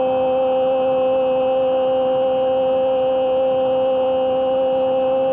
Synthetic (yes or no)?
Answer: no